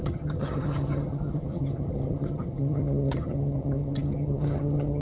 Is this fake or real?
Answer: fake